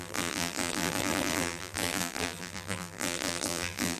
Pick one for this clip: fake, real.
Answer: fake